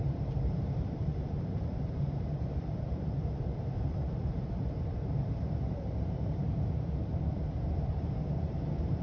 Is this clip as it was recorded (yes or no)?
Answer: no